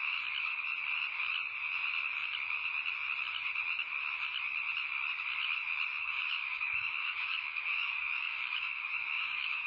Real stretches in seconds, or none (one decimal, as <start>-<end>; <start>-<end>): 0.0-6.0